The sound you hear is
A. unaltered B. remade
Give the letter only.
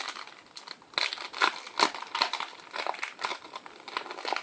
A